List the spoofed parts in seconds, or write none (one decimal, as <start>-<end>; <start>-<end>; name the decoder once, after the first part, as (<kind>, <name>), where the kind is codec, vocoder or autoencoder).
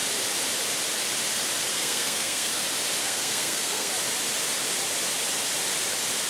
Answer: 1.7-2.6 (codec, SNAC); 3.0-3.9